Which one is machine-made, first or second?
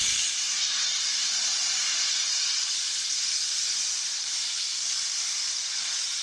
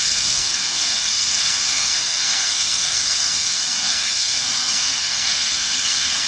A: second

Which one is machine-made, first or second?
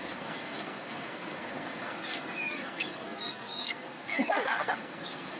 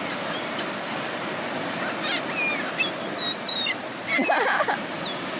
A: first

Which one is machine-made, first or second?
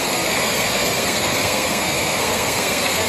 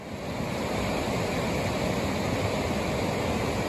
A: first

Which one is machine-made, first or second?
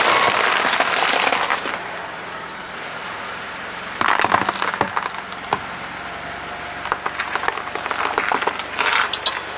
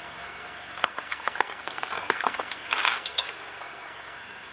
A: second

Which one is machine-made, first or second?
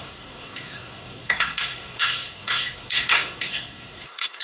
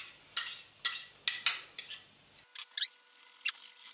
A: first